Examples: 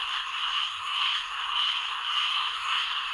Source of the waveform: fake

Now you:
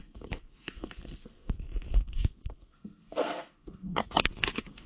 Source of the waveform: fake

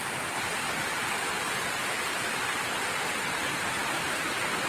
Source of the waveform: real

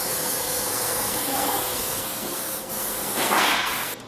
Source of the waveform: fake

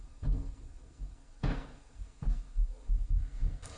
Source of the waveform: fake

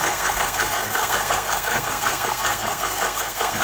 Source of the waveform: fake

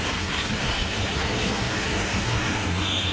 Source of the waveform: fake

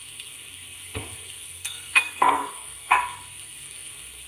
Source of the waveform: fake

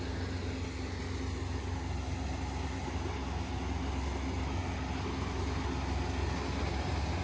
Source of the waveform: real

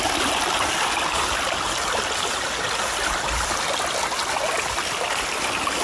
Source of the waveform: real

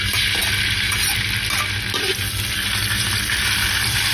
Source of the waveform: real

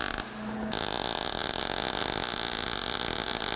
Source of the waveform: real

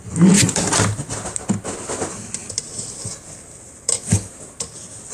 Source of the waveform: real